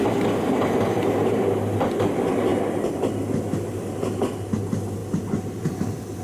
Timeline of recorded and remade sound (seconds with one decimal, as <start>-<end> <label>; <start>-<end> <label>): 0.0-6.2 recorded